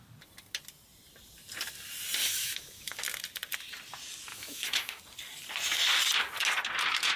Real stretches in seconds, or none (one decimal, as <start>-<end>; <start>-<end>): 0.0-2.2; 3.0-4.3; 5.0-7.2